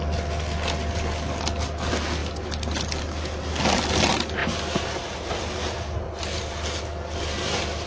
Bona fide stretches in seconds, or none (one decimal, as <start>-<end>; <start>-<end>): 0.0-7.9